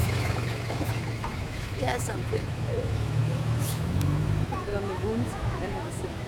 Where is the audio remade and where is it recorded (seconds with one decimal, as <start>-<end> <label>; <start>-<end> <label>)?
0.0-6.3 remade